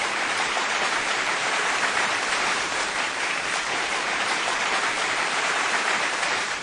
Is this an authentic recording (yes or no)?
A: no